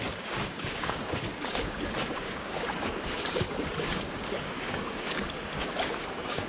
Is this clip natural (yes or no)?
no